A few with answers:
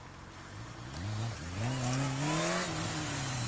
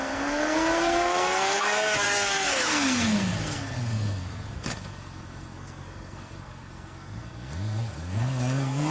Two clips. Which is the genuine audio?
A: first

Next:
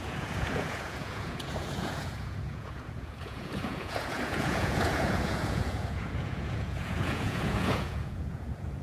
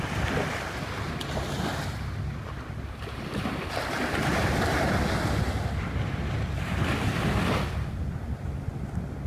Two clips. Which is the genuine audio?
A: second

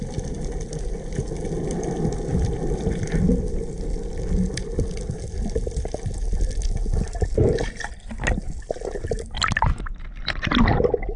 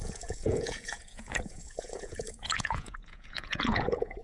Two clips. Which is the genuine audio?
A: first